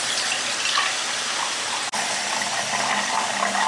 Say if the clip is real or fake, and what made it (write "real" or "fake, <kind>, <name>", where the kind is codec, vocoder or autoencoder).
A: real